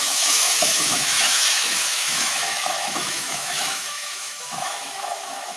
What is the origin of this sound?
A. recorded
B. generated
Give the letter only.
B